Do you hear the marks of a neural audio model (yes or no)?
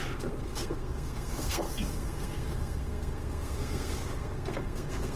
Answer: yes